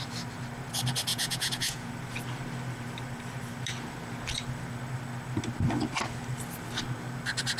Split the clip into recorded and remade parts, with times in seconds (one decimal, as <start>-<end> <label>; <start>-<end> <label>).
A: 0.0-1.1 recorded; 1.1-1.9 remade; 1.9-7.6 recorded